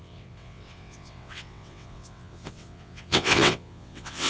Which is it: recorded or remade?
remade